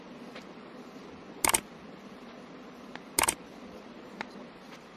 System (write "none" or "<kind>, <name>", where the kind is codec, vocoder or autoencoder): none